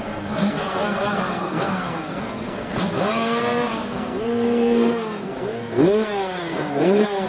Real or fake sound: fake